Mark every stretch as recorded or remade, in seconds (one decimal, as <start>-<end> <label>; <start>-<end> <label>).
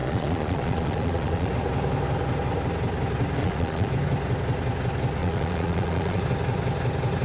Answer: 0.0-1.5 remade; 1.5-3.4 recorded; 3.4-3.9 remade; 3.9-5.2 recorded; 5.2-6.2 remade; 6.2-7.2 recorded